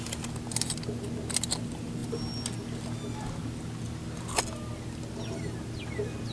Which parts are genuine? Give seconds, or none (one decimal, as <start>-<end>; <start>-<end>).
0.0-6.3